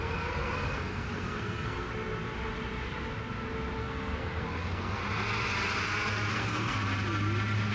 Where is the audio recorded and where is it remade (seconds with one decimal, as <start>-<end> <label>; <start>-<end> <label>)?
0.0-1.9 remade; 1.9-3.8 recorded; 3.8-5.0 remade; 5.0-6.3 recorded; 6.3-6.8 remade; 6.8-7.7 recorded